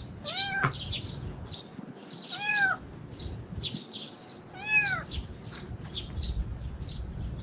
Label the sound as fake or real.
real